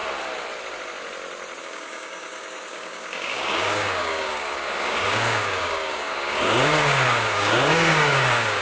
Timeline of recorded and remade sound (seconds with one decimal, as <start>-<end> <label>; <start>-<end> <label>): 0.0-1.6 recorded; 1.6-8.6 remade